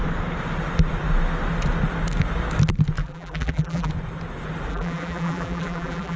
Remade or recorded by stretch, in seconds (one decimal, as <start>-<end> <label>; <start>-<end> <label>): 0.0-3.0 recorded; 3.0-3.9 remade; 3.9-4.7 recorded; 4.7-6.2 remade